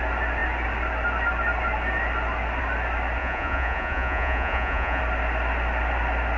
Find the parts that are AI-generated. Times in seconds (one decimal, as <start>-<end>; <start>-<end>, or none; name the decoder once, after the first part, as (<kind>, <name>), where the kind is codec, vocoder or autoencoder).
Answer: 3.2-5.0 (vocoder, Vocos)